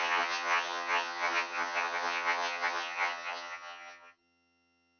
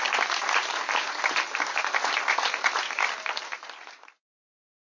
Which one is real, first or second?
second